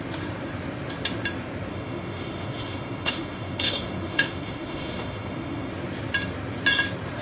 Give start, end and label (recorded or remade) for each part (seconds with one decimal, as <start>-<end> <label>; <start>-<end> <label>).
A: 0.0-1.7 recorded; 1.7-5.7 remade; 5.7-7.2 recorded